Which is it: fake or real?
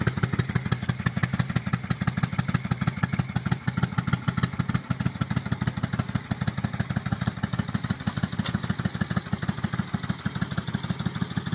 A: real